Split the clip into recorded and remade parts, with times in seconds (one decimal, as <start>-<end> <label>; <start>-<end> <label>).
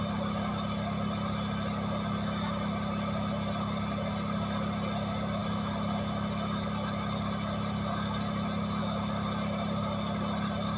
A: 0.0-10.8 recorded